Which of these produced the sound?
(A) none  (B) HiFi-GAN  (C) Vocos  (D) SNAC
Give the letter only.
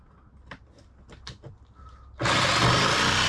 A